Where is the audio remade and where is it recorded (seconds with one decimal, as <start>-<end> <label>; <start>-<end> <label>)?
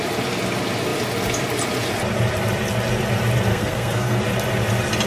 0.0-3.5 recorded; 3.5-4.2 remade; 4.2-5.1 recorded